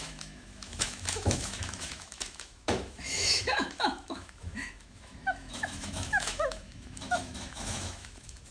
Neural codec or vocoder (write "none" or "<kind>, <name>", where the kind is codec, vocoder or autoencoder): autoencoder, DAC-VAE